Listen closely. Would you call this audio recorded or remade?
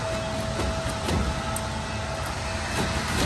recorded